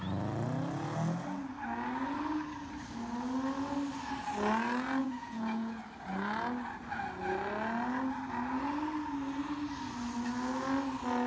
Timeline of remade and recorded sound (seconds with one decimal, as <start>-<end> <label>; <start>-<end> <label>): 0.0-5.0 recorded; 5.0-5.8 remade; 5.8-11.3 recorded